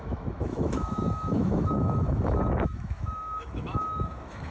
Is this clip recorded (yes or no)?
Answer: no